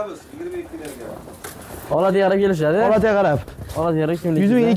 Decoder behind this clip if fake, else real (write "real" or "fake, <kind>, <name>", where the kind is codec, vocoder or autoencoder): real